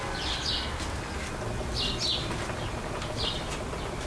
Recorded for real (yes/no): yes